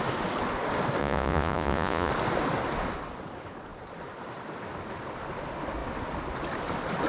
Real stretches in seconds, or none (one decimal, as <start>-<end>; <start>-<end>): 0.0-1.0; 2.1-7.1